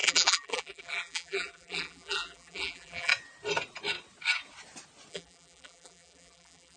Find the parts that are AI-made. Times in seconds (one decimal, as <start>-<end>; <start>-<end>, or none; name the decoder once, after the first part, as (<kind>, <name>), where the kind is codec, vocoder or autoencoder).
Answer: 0.0-3.1 (vocoder, BigVGAN v2); 5.1-6.8